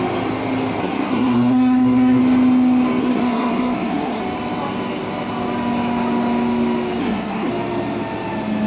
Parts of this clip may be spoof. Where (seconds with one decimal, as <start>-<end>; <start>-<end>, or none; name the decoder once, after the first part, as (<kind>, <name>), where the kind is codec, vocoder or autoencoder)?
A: 0.8-2.2 (codec, SNAC); 3.0-4.2; 7.0-7.5